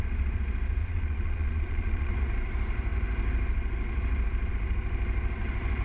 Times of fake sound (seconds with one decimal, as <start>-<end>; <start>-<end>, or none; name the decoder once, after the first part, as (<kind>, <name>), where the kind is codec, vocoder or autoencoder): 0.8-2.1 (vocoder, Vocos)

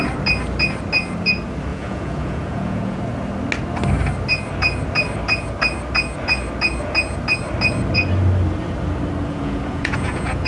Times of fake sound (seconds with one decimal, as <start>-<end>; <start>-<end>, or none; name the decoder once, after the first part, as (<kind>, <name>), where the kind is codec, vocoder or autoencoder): 1.7-3.0 (vocoder, Vocos); 9.3-10.5

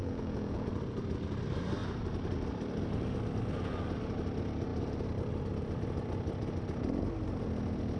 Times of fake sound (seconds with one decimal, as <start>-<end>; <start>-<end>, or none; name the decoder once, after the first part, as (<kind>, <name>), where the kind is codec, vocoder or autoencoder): 0.0-0.7 (vocoder, Vocos)